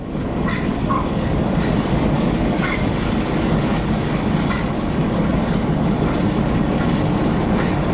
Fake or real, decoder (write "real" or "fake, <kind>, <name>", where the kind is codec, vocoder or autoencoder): fake, codec, DAC